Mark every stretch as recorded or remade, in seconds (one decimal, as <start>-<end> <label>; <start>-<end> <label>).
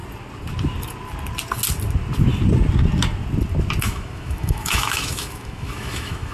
0.0-3.8 recorded; 3.8-6.3 remade